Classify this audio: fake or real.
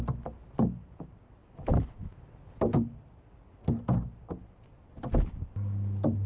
real